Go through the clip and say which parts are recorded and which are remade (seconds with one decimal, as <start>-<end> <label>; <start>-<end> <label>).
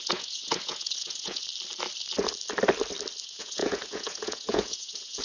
0.0-1.4 remade; 1.4-3.2 recorded; 3.2-5.2 remade